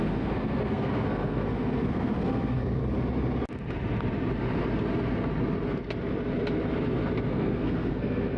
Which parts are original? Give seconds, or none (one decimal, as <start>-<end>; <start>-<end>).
2.8-7.3